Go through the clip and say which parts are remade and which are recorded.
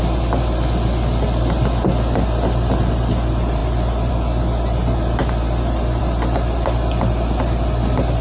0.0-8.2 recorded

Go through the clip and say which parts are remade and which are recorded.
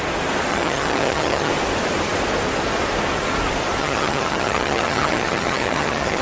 0.0-0.5 recorded; 0.5-1.5 remade; 1.5-3.8 recorded; 3.8-6.2 remade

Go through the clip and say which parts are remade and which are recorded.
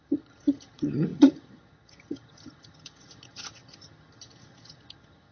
0.0-5.3 remade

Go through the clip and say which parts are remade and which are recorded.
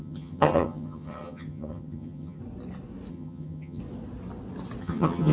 0.0-2.4 remade; 2.4-3.1 recorded; 3.1-3.8 remade; 3.8-4.8 recorded; 4.8-5.3 remade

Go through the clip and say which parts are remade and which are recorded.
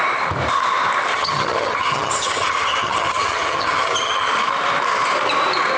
0.0-1.1 recorded; 1.1-4.3 remade; 4.3-5.8 recorded